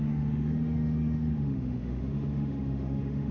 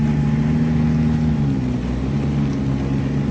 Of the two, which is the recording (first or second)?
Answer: second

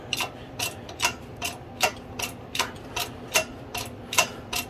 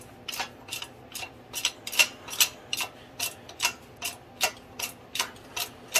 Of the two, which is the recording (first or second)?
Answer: second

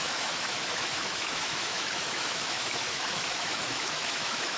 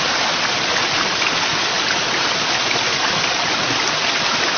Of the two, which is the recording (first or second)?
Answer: second